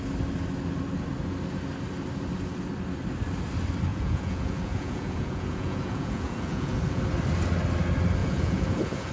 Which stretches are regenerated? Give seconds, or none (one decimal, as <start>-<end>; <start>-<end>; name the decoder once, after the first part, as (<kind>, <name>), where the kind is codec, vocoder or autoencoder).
3.9-7.0 (vocoder, Vocos); 8.2-9.1